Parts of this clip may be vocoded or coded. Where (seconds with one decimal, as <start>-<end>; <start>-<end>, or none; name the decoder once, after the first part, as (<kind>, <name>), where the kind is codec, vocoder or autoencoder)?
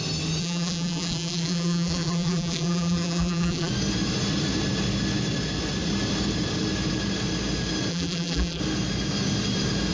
0.4-3.7 (vocoder, BigVGAN v2); 7.9-8.6